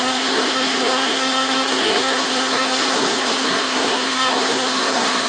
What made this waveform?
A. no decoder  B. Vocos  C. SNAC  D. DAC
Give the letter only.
C